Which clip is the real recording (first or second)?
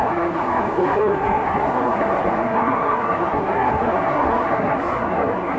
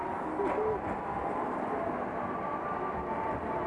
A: second